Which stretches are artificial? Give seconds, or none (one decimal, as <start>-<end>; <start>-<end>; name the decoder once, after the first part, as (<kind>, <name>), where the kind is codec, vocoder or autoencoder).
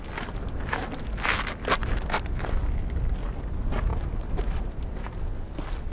none